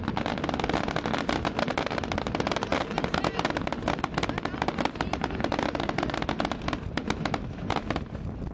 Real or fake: real